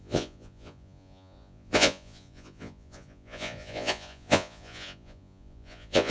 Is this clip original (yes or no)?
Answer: no